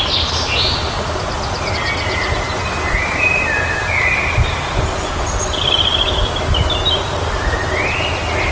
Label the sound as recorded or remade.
recorded